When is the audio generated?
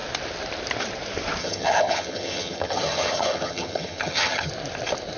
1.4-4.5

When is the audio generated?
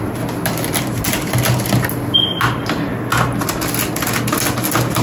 none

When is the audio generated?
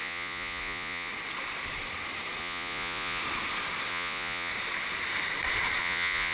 0.0-1.1; 2.4-3.2; 3.9-4.5; 5.8-6.3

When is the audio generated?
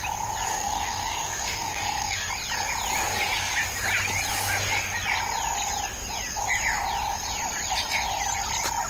0.5-2.3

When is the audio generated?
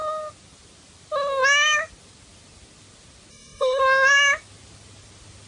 3.3-3.8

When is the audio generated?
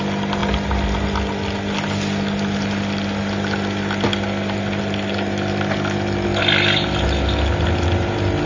none